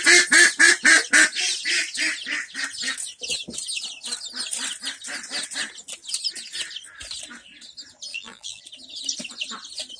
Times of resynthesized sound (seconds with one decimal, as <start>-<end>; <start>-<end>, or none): 8.1-8.6